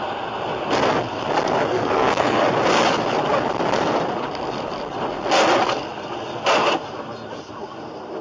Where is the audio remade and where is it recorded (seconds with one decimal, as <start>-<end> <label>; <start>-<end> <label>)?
0.0-1.7 recorded; 1.7-2.4 remade; 2.4-8.2 recorded